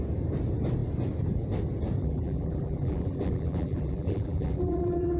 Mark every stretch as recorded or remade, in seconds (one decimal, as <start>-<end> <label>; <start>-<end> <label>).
0.0-2.0 recorded; 2.0-5.2 remade